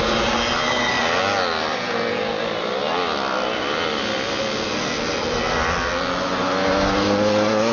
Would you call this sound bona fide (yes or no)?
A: yes